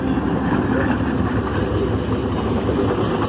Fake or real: real